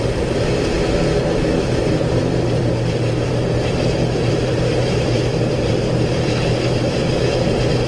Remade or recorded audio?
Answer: remade